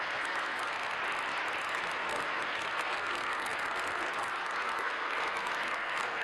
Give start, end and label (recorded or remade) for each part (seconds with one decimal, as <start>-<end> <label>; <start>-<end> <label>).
0.0-1.0 remade; 1.0-1.7 recorded; 1.7-6.2 remade